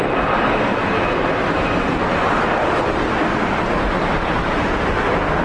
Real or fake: real